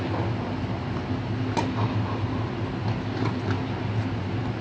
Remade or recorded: recorded